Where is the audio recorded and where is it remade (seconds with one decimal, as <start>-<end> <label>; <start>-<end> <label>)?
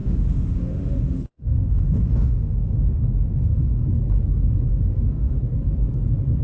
0.0-3.8 remade; 3.8-4.7 recorded; 4.7-5.4 remade; 5.4-6.4 recorded